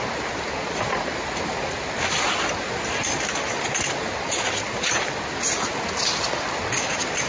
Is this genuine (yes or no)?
yes